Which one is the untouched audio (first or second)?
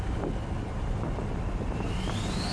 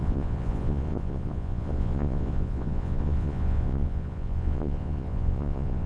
first